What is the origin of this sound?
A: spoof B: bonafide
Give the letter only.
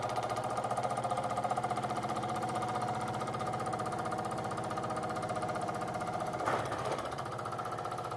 A